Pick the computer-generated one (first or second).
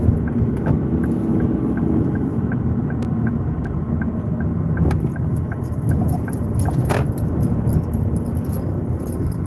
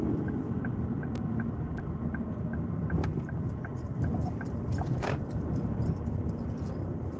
second